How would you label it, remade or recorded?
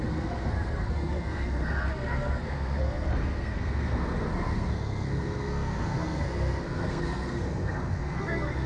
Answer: remade